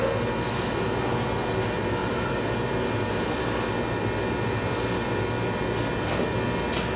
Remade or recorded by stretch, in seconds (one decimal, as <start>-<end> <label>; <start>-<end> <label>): 0.0-7.0 recorded